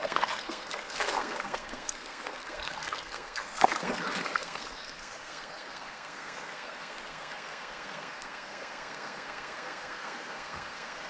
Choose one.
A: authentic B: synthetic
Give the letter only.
B